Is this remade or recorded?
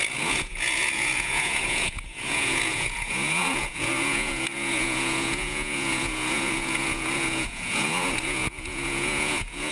remade